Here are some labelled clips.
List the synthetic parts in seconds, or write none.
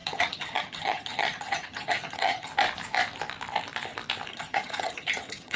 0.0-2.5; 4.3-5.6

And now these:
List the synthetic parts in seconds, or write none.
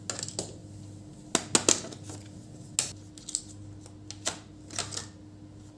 none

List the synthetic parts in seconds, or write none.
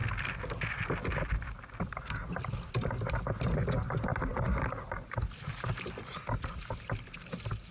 none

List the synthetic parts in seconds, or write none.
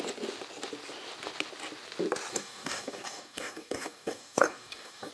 2.3-5.1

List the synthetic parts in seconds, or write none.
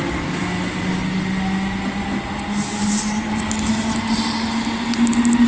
none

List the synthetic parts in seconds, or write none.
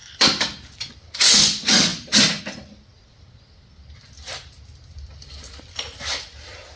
1.9-2.4